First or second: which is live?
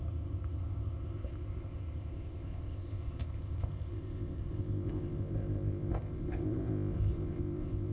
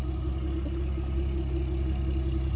second